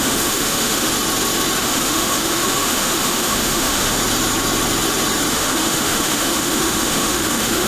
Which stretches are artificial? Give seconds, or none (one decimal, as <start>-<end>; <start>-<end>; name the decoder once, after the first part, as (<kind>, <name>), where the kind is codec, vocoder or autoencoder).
0.0-0.9 (autoencoder, DAC-VAE); 1.6-4.0; 5.3-7.7